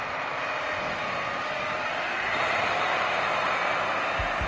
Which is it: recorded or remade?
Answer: recorded